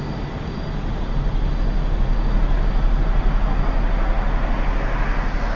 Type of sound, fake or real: real